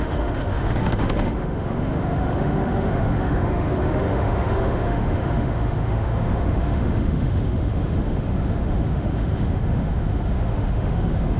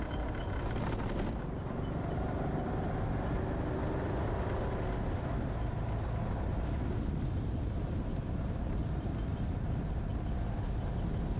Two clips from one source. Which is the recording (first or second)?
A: second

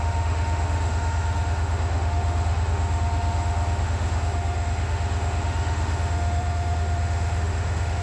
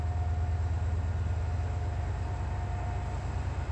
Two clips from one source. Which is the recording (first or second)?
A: second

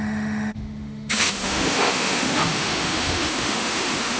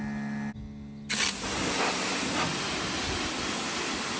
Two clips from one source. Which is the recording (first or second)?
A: second